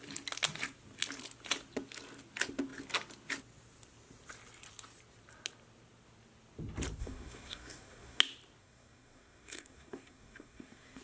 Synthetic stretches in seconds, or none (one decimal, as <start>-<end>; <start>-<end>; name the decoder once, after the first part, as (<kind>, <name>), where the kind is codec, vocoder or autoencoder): 7.0-8.2 (codec, SNAC); 8.6-11.0